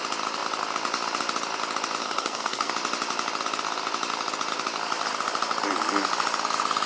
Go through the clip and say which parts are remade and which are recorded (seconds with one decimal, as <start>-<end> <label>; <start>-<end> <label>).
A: 0.0-2.0 recorded; 2.0-2.7 remade; 2.7-6.9 recorded